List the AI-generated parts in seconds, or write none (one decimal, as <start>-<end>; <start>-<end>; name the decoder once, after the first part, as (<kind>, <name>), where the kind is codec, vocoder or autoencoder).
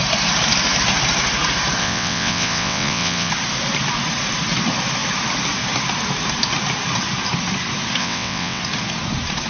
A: 1.8-3.3 (vocoder, WaveNeXt); 8.0-8.6